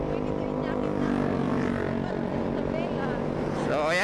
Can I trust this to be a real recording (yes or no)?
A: yes